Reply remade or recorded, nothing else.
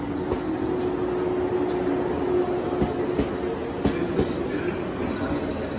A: recorded